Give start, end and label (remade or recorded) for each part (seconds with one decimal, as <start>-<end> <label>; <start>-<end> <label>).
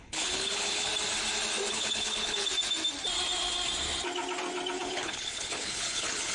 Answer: 0.0-0.9 remade; 0.9-1.7 recorded; 1.7-2.5 remade; 2.5-4.8 recorded; 4.8-6.3 remade